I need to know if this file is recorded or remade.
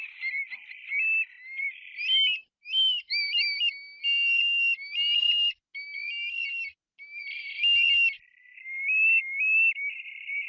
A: recorded